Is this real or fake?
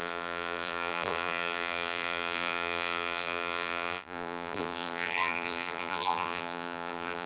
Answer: fake